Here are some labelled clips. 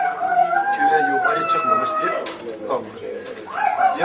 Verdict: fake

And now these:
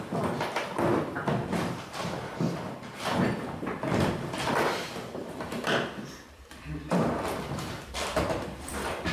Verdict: fake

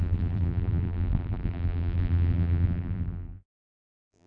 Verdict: fake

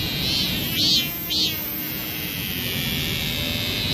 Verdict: real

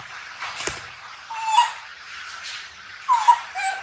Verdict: fake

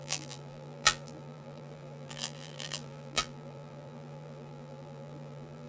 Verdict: fake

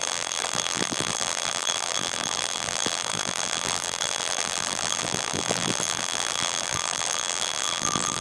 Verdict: fake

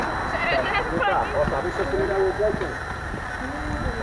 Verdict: real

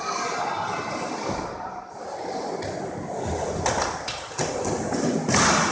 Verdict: real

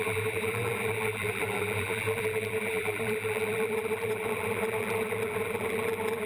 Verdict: fake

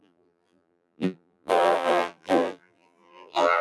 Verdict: fake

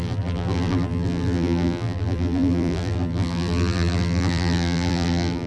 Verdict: fake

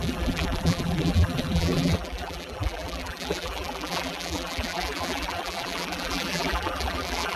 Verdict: fake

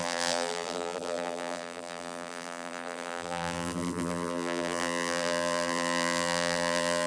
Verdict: fake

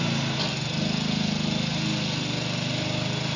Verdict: real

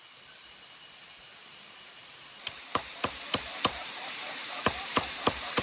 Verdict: fake